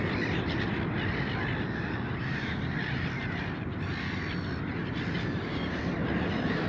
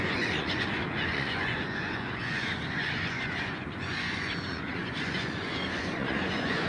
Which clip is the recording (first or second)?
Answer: first